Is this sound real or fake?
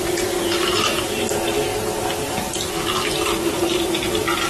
real